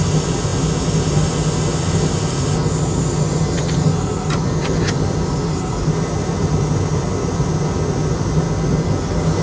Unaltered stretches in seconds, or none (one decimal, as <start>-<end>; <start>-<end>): 0.0-9.4